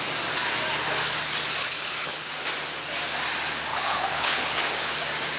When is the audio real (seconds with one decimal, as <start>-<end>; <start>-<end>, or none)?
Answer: 0.0-1.6; 2.3-3.7; 4.6-5.4